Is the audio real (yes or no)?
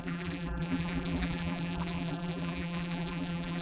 no